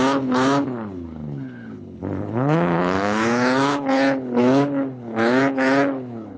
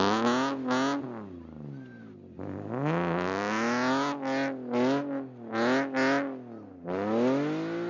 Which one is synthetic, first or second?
first